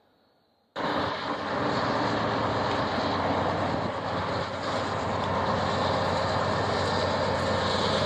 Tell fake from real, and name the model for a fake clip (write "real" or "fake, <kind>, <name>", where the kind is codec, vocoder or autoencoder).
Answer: real